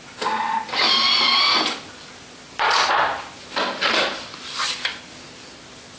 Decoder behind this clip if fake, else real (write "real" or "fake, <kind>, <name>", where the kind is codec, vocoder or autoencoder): fake, vocoder, BigVGAN v2